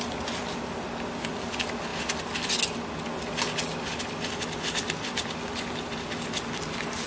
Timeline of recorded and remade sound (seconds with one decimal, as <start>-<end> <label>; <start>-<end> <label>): 0.0-7.1 recorded